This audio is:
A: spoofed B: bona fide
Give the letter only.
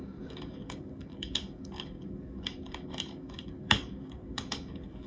A